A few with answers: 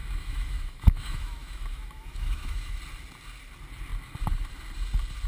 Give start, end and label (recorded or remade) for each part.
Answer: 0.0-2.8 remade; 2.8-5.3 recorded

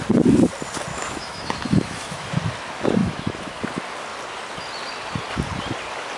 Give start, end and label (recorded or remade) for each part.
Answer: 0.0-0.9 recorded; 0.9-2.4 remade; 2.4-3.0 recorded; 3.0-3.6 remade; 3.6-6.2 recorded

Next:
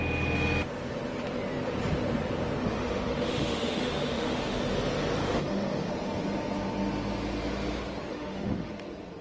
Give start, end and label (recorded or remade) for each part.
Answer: 0.0-2.6 recorded; 2.6-4.6 remade; 4.6-5.2 recorded; 5.2-5.9 remade; 5.9-8.1 recorded; 8.1-8.7 remade; 8.7-9.2 recorded

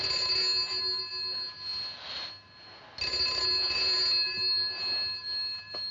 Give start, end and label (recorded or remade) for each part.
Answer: 0.0-5.9 recorded

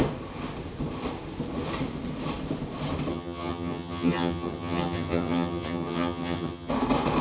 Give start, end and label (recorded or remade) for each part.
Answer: 0.0-3.1 recorded; 3.1-6.7 remade; 6.7-7.2 recorded

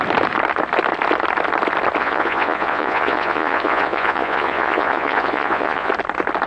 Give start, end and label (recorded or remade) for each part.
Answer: 0.0-2.0 recorded; 2.0-5.9 remade; 5.9-6.5 recorded